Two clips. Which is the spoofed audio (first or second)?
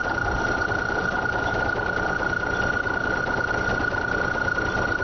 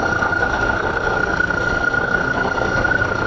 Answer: second